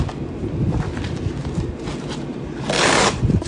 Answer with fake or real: real